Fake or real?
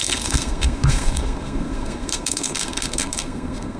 fake